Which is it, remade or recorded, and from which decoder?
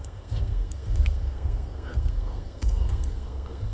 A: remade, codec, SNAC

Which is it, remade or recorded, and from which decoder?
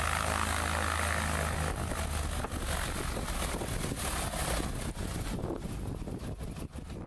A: recorded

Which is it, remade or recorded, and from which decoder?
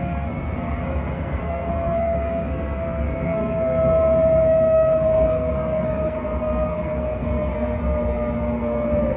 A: remade, codec, SNAC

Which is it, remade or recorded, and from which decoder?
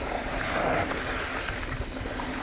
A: recorded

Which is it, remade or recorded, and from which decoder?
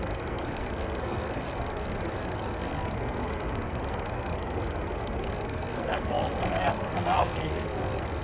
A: remade, codec, SNAC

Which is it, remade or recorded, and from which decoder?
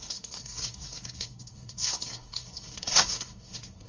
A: remade, codec, SNAC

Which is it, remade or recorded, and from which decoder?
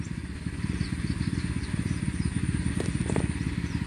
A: recorded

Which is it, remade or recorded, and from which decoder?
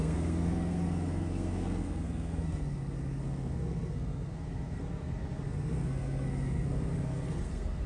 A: remade, codec, SNAC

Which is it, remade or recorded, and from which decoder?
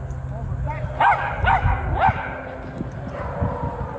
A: recorded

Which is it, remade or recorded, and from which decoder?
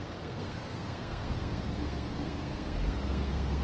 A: remade, codec, SNAC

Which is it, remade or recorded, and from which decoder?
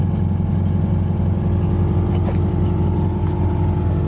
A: recorded